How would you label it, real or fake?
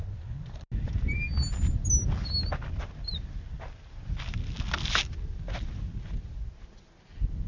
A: real